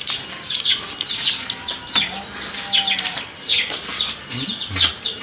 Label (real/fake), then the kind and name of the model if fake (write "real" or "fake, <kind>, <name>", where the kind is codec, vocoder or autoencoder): real